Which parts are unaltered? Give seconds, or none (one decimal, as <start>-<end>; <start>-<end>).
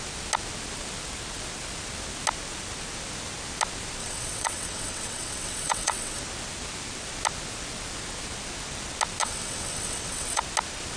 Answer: 0.0-4.0; 6.2-9.2; 10.4-11.0